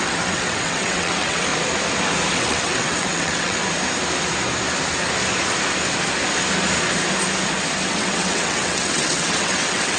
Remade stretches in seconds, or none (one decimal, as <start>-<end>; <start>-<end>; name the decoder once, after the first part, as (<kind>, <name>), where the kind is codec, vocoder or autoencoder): 0.0-1.5 (vocoder, WaveNeXt); 2.3-3.6; 7.9-10.0